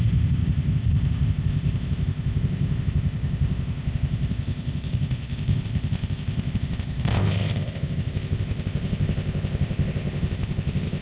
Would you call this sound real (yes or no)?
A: no